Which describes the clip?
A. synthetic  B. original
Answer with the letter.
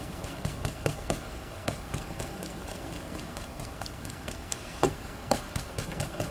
A